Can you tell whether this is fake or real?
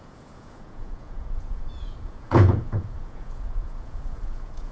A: fake